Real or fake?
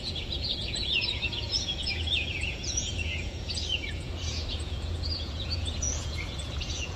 fake